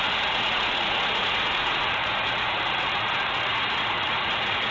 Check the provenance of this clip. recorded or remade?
remade